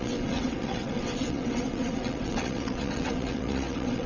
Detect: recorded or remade remade